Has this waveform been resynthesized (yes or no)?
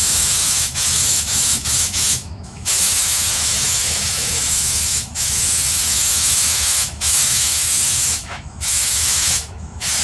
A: yes